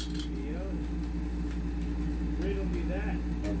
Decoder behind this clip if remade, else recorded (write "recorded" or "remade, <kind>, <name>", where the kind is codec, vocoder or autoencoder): recorded